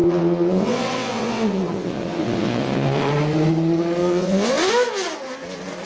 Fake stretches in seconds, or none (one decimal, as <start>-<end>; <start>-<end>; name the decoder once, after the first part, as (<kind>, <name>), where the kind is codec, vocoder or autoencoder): 0.0-3.1 (vocoder, WaveNeXt); 4.0-4.7